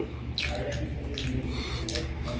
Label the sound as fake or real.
real